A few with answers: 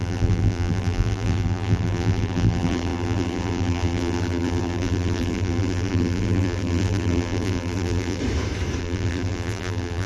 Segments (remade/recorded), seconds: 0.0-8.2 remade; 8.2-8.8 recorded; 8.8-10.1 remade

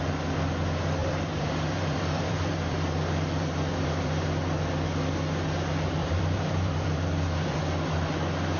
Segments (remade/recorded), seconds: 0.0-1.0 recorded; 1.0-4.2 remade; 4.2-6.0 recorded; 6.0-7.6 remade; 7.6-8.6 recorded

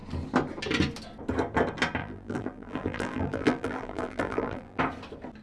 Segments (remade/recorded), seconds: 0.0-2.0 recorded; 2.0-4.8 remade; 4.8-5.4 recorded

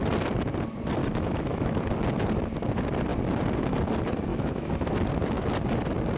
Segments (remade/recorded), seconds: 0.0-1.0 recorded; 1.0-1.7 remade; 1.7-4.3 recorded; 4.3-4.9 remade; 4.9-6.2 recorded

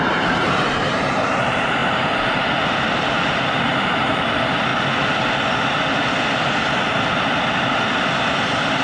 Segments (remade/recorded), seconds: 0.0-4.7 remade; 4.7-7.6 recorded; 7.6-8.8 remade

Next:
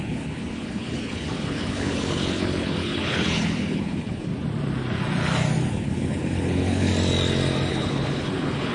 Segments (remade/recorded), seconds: 0.0-4.3 remade; 4.3-5.7 recorded; 5.7-6.9 remade; 6.9-7.7 recorded; 7.7-8.7 remade

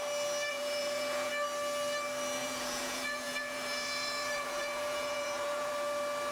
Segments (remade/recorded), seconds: 0.0-0.5 recorded; 0.5-1.3 remade; 1.3-2.4 recorded; 2.4-5.7 remade; 5.7-6.3 recorded